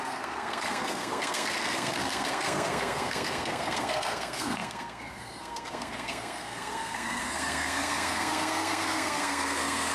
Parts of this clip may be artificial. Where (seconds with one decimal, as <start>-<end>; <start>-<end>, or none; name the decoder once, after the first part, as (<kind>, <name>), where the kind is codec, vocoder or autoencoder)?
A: 0.0-9.9 (codec, SNAC)